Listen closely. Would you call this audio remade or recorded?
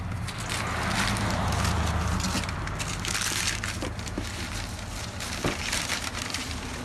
recorded